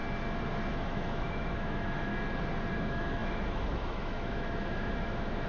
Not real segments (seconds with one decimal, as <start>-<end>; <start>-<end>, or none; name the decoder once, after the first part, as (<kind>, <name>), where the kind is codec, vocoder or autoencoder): 0.7-2.1 (autoencoder, DAC-VAE); 2.7-5.5